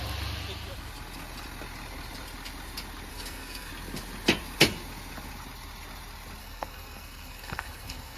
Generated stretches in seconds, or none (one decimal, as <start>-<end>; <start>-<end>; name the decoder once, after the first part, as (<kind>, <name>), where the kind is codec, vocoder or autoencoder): 3.1-3.7 (codec, SNAC); 6.4-8.2